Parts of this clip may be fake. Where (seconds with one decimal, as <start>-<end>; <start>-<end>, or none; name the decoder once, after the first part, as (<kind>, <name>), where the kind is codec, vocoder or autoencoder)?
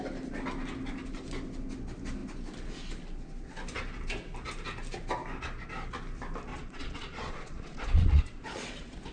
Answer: 6.5-9.1 (vocoder, Vocos)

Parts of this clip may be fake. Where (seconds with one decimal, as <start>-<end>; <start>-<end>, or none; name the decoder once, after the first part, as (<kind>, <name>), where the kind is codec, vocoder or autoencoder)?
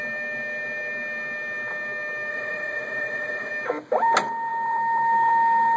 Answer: 2.3-3.5 (vocoder, Vocos)